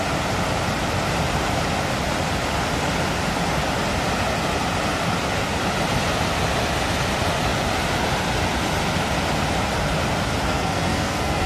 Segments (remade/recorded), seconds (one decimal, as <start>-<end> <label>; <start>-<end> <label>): 0.0-10.5 recorded; 10.5-11.5 remade